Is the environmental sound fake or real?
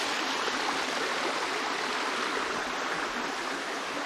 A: real